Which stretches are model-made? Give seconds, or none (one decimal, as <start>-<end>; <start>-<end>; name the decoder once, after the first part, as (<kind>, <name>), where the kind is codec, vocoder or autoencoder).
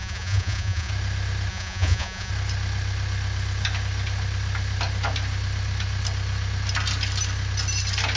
0.0-0.9 (vocoder, Vocos); 1.5-2.3